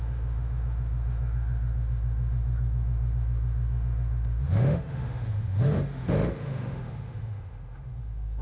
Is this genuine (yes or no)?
no